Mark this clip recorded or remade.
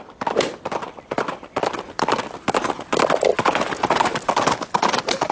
recorded